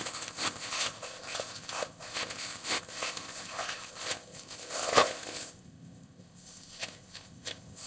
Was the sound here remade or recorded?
remade